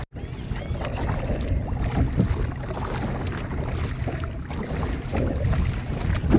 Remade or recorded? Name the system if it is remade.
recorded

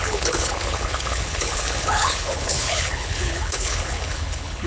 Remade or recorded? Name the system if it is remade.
remade, codec, HILCodec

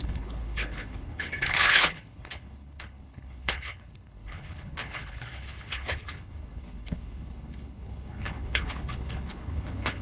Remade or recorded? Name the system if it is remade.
remade, codec, HILCodec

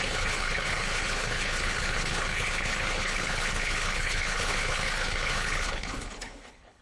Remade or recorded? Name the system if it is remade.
remade, codec, HILCodec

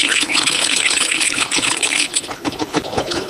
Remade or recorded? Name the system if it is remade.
remade, codec, HILCodec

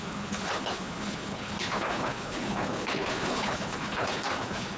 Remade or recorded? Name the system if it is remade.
remade, codec, HILCodec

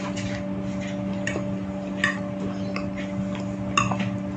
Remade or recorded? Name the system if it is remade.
recorded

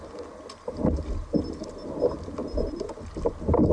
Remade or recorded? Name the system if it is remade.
recorded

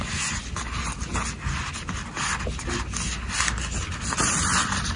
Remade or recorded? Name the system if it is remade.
recorded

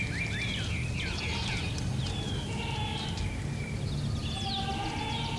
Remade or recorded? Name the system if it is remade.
recorded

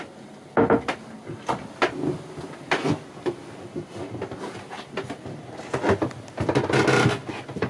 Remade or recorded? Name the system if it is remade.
recorded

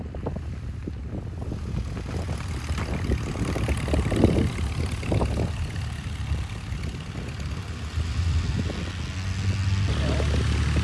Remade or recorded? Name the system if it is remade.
recorded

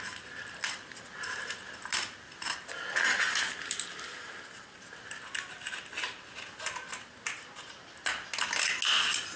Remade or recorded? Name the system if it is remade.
recorded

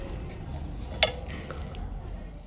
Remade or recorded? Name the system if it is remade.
recorded